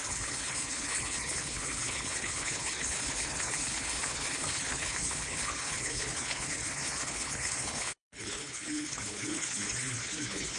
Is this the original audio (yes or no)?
no